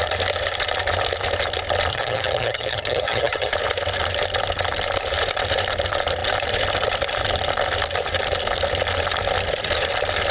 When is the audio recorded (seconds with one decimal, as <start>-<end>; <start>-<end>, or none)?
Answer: 0.0-1.9; 3.5-10.3